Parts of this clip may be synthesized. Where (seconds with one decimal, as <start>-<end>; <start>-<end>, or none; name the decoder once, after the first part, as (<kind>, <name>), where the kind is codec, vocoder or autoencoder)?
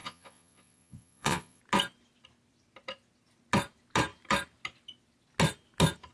0.0-1.6 (vocoder, Vocos)